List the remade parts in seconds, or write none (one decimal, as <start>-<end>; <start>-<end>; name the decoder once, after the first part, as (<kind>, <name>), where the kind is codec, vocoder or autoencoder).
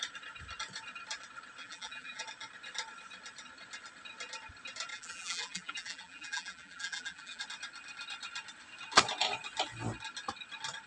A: 1.6-2.2 (vocoder, BigVGAN v2); 4.9-7.4